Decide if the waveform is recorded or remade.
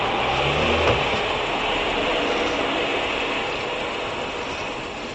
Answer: recorded